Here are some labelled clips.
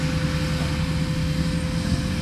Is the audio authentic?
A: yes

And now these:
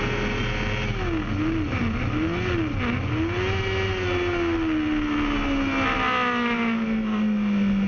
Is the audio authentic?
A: yes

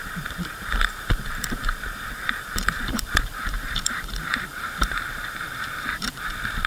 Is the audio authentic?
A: no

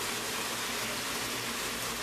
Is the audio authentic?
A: yes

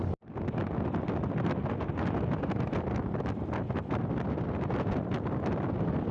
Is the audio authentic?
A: yes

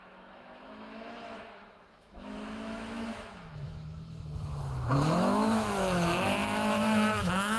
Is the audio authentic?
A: no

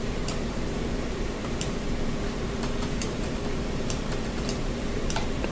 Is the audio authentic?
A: no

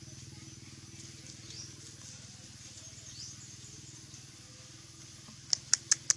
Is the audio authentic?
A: yes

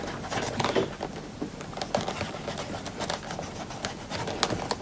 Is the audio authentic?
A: yes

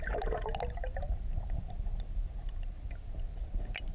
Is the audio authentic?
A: yes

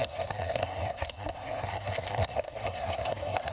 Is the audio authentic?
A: no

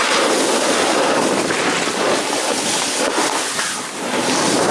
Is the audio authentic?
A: yes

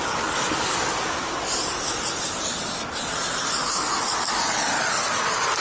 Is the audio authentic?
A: yes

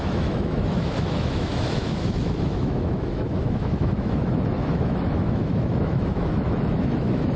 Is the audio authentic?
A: no